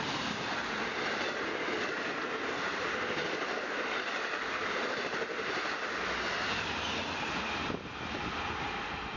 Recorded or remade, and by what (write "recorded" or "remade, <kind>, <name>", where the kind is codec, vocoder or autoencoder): recorded